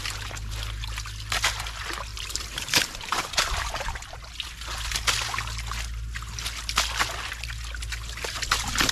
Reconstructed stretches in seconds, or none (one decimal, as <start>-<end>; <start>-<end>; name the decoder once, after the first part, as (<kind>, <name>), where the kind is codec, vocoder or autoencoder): 2.1-3.3 (vocoder, BigVGAN v2)

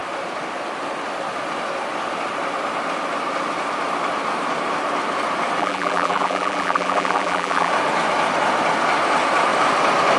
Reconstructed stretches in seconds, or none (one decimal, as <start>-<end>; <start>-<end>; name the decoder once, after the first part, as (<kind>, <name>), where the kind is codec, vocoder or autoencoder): 5.6-7.7 (vocoder, BigVGAN v2)

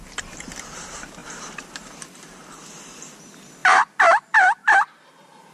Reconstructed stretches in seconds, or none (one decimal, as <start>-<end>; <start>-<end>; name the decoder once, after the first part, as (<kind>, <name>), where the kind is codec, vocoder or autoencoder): 0.0-5.5 (vocoder, BigVGAN v2)

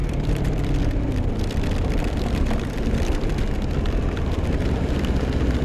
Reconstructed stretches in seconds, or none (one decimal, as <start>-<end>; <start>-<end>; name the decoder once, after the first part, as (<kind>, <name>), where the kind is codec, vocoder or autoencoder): 0.0-3.4 (vocoder, BigVGAN v2)

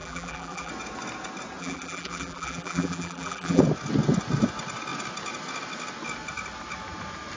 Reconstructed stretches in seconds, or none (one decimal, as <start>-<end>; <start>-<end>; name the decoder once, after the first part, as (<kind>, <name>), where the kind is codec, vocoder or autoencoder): 0.0-0.7 (vocoder, BigVGAN v2); 1.6-3.6